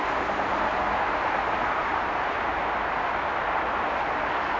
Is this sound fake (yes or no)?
no